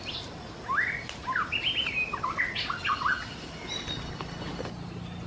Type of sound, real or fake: real